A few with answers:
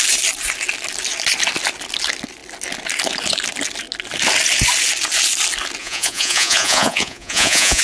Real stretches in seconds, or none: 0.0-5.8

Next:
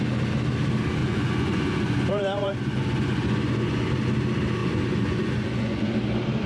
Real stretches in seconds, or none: 0.0-1.0; 3.9-4.6; 5.9-6.5